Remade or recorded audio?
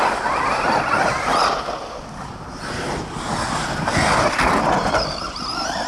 recorded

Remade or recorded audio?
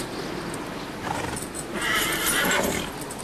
recorded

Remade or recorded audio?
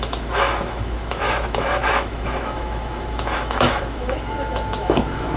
remade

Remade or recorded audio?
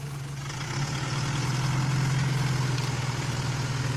recorded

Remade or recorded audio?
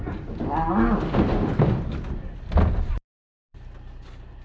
recorded